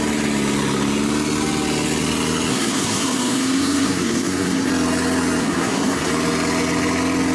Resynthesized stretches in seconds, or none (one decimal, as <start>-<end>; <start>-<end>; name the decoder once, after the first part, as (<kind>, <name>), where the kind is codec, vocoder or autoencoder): 2.5-4.7 (codec, SNAC); 5.4-6.1